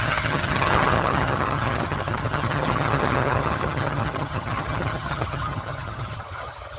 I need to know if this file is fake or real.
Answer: fake